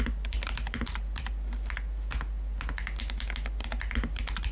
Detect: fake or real real